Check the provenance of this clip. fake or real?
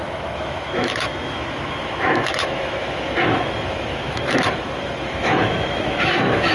fake